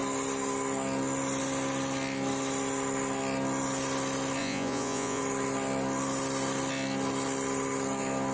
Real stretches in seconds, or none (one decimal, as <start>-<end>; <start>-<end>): 0.0-4.4; 5.2-8.3

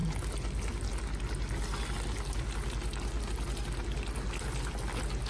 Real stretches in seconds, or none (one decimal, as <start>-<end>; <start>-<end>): 0.0-5.3

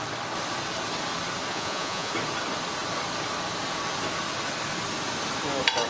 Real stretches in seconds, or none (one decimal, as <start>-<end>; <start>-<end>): 0.0-1.5; 2.1-5.9

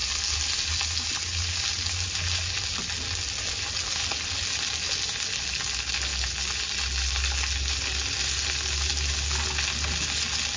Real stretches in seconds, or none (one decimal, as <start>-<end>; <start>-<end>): 0.0-10.6

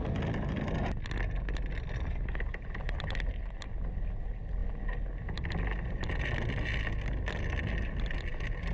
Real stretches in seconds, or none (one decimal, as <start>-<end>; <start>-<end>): 0.0-8.7